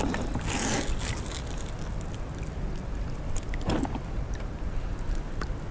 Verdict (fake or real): real